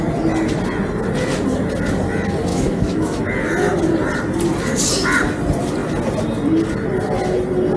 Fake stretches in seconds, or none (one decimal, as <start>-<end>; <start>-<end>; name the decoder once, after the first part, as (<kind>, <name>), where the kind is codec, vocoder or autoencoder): 2.5-3.2 (autoencoder, DAC-VAE)